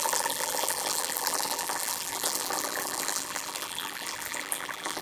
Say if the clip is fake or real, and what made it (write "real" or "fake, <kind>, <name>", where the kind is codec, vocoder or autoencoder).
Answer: fake, vocoder, BigVGAN v2